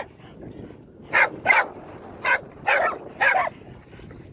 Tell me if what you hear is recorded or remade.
recorded